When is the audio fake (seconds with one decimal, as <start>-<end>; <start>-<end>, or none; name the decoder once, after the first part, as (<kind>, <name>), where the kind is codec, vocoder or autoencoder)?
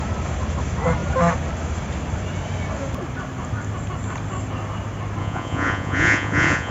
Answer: 5.2-6.7 (vocoder, Vocos)